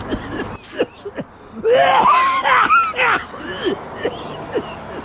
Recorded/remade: recorded